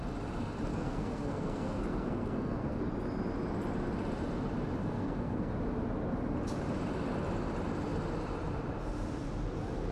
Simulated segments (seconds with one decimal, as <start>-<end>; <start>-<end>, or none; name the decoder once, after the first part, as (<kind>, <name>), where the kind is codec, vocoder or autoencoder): 0.7-2.8 (codec, SNAC); 4.8-5.5